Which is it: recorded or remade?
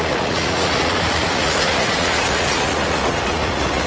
remade